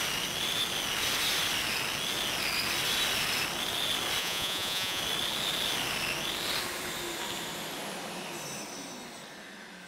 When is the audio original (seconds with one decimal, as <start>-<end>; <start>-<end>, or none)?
0.0-4.2; 5.0-9.9